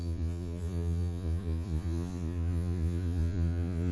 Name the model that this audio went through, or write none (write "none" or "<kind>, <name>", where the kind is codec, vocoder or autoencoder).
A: vocoder, Vocos